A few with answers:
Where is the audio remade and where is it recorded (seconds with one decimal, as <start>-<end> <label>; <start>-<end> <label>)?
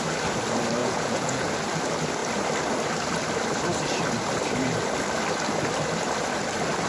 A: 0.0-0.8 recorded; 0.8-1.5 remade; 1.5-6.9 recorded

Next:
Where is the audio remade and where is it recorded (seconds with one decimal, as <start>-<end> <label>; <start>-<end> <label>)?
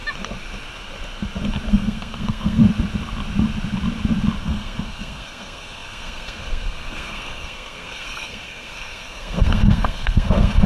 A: 0.0-1.7 recorded; 1.7-2.6 remade; 2.6-4.4 recorded; 4.4-10.7 remade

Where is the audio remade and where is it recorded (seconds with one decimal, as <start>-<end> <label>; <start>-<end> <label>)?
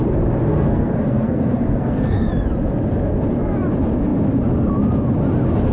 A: 0.0-0.5 recorded; 0.5-2.3 remade; 2.3-5.7 recorded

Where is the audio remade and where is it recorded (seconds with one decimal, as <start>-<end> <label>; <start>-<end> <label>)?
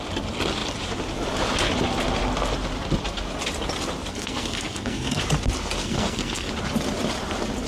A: 0.0-4.1 recorded; 4.1-5.2 remade; 5.2-5.8 recorded; 5.8-6.5 remade; 6.5-7.7 recorded